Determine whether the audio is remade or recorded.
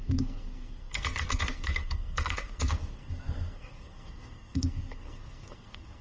remade